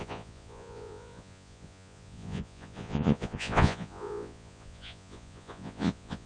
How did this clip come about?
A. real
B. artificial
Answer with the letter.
B